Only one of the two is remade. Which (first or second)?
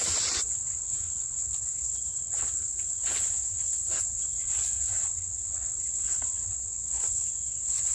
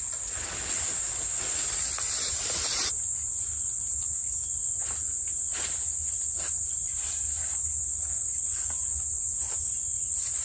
first